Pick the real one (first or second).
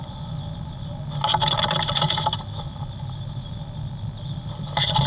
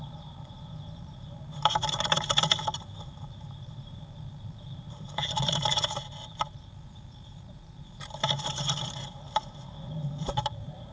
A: first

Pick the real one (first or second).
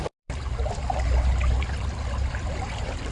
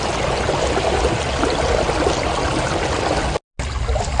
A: second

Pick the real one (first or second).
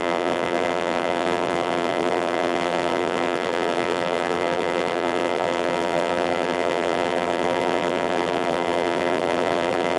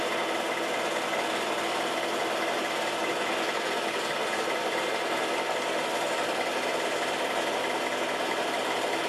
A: second